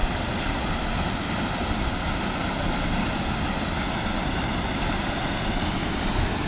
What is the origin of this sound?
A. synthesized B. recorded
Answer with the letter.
B